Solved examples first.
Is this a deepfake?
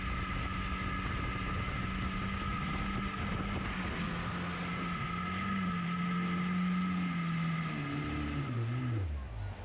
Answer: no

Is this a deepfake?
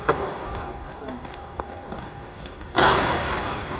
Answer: yes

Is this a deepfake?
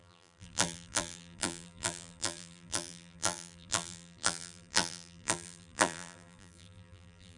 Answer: yes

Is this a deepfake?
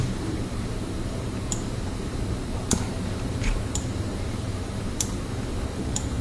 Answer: yes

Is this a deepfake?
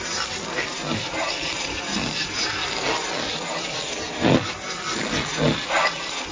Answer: no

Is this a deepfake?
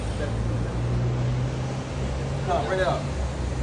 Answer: no